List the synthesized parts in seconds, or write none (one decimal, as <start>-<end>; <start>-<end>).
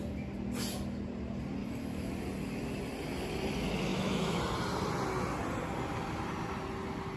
1.6-2.1; 3.9-4.4